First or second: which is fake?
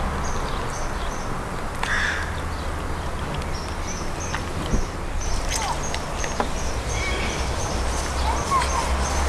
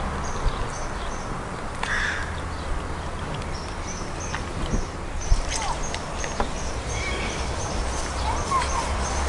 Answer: second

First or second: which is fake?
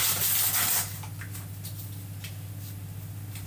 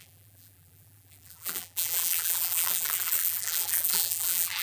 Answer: second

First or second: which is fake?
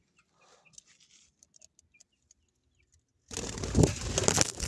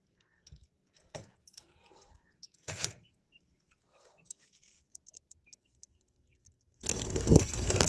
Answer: second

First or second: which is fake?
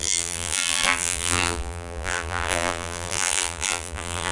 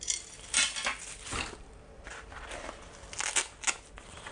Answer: first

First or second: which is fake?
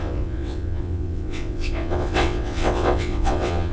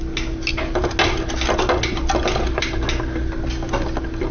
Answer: first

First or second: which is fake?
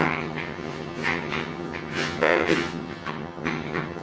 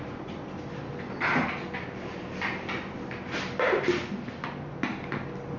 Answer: first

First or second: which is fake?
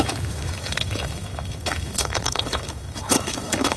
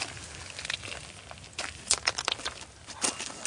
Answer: first